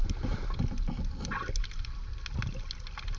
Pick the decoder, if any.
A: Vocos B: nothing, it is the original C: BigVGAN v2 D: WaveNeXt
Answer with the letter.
B